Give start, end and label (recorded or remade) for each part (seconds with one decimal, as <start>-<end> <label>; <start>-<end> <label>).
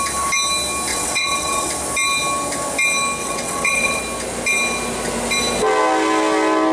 0.0-0.9 recorded; 0.9-1.7 remade; 1.7-3.2 recorded; 3.2-4.0 remade; 4.0-6.7 recorded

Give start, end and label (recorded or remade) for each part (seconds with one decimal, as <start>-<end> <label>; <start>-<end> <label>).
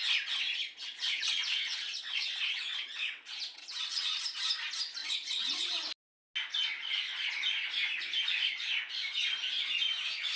0.0-0.8 recorded; 0.8-4.2 remade; 4.2-5.0 recorded; 5.0-5.9 remade; 5.9-10.4 recorded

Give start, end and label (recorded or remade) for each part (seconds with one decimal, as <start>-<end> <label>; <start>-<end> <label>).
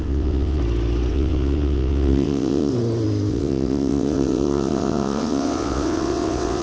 0.0-0.6 remade; 0.6-1.1 recorded; 1.1-2.7 remade; 2.7-3.3 recorded; 3.3-6.6 remade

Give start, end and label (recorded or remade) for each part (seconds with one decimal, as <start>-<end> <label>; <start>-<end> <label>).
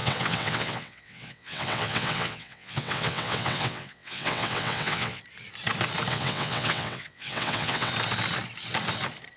0.0-5.2 remade; 5.2-6.1 recorded; 6.1-7.9 remade; 7.9-9.4 recorded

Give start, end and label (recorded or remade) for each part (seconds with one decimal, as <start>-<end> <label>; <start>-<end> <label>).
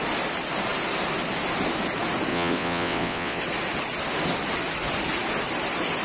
0.0-2.3 recorded; 2.3-3.4 remade; 3.4-6.0 recorded